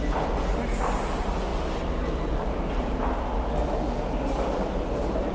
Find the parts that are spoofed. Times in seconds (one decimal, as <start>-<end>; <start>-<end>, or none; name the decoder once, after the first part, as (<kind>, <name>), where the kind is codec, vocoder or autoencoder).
none